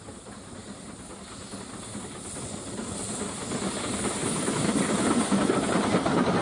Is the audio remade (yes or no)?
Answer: no